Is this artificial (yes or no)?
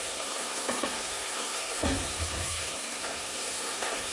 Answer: yes